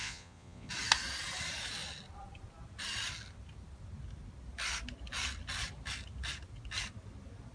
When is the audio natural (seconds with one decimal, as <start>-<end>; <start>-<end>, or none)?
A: 0.7-7.5